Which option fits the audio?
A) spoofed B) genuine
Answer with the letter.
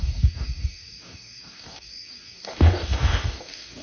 A